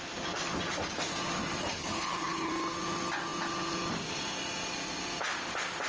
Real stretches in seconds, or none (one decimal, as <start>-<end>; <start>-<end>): 0.0-1.7; 2.5-5.9